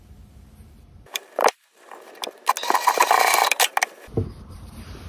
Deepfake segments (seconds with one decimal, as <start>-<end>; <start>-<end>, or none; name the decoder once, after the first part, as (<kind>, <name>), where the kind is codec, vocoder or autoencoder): 0.0-1.4 (vocoder, BigVGAN v2); 4.5-5.1